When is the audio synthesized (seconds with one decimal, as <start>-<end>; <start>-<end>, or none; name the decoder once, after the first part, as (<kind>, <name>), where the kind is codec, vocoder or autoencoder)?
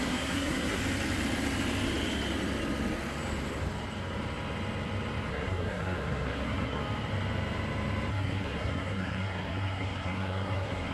0.0-0.8 (codec, SNAC); 5.3-6.8; 8.1-10.9